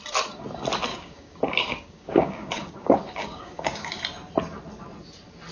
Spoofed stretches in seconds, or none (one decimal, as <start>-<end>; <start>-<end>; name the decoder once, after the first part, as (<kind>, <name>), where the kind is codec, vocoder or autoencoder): 0.9-4.0 (codec, DAC)